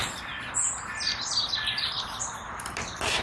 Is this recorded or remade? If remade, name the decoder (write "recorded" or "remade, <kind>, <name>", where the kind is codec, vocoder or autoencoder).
recorded